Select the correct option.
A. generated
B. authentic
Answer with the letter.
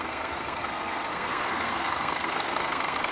A